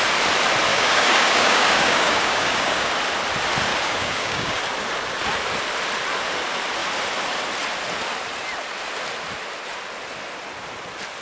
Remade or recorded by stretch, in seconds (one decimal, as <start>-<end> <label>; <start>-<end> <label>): 0.0-0.7 recorded; 0.7-2.9 remade; 2.9-3.7 recorded; 3.7-4.6 remade; 4.6-11.2 recorded